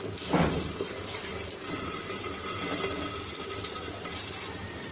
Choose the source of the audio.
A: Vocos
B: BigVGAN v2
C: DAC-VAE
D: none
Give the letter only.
D